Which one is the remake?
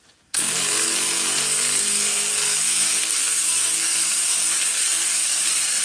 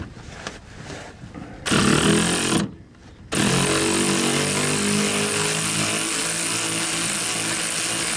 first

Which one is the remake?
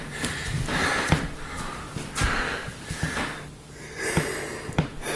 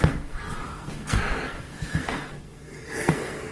second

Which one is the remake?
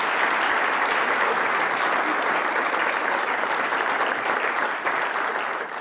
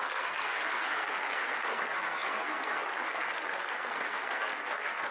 second